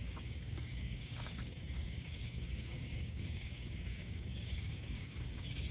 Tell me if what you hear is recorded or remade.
remade